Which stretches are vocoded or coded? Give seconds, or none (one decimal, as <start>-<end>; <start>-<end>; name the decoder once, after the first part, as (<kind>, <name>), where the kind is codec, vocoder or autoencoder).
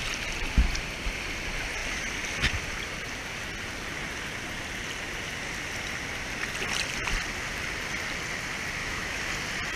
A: 8.8-9.3 (autoencoder, DAC-VAE)